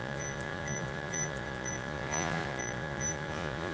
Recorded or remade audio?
remade